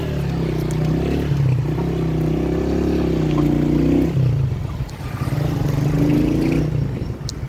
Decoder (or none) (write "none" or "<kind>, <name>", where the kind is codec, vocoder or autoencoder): none